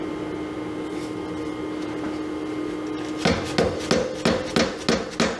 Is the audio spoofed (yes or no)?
no